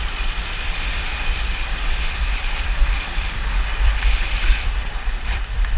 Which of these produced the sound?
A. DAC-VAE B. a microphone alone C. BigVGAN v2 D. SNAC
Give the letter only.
C